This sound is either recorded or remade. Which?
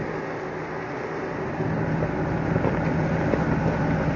recorded